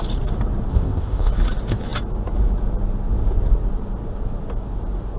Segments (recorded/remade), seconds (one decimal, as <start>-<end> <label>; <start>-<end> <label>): 0.0-0.7 recorded; 0.7-1.3 remade; 1.3-5.2 recorded